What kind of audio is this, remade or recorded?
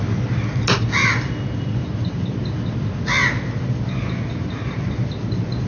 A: recorded